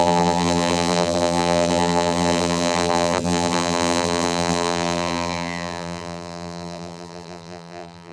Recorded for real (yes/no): no